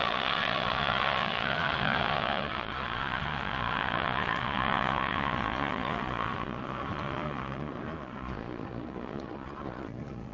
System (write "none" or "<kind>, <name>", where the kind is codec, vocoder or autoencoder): vocoder, Vocos